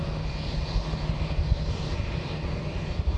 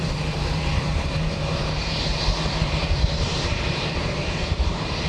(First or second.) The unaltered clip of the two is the first